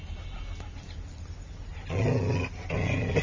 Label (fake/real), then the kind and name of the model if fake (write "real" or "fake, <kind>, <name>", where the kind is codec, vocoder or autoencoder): real